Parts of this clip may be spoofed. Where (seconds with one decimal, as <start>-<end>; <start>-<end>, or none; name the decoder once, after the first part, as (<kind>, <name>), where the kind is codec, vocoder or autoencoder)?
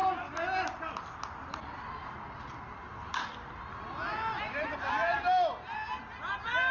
none